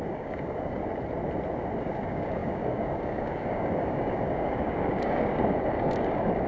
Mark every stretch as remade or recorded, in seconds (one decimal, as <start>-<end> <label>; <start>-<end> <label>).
0.0-0.8 remade; 0.8-1.8 recorded; 1.8-6.5 remade